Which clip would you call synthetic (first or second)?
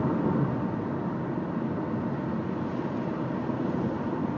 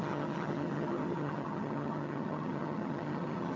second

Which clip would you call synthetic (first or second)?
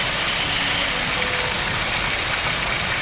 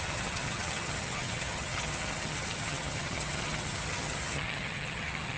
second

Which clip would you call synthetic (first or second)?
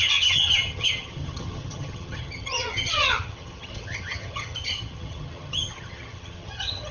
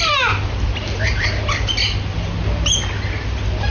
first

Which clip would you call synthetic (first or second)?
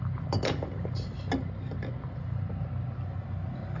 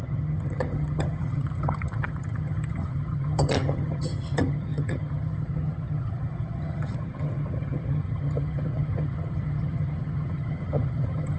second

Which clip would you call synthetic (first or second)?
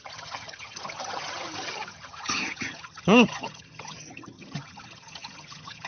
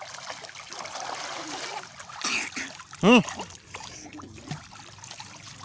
first